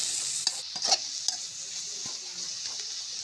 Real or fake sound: real